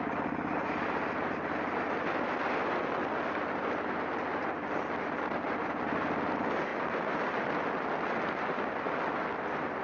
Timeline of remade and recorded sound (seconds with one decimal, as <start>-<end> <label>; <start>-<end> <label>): 0.0-9.8 recorded